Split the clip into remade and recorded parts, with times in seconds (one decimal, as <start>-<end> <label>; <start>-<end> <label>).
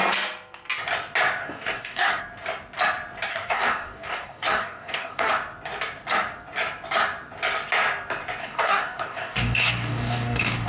0.0-1.4 recorded; 1.4-2.2 remade; 2.2-3.3 recorded; 3.3-5.3 remade; 5.3-8.4 recorded; 8.4-10.7 remade